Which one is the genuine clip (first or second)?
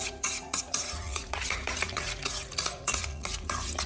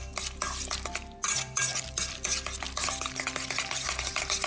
second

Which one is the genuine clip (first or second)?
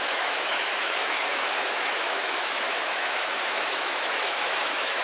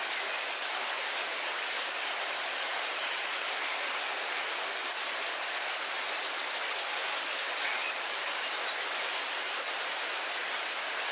second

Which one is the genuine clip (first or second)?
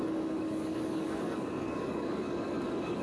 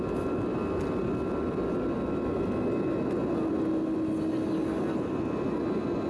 second